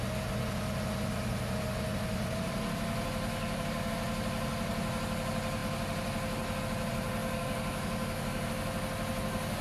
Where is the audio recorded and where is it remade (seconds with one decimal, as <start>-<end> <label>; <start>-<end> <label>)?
0.0-3.3 recorded; 3.3-3.9 remade; 3.9-7.2 recorded; 7.2-8.5 remade; 8.5-9.6 recorded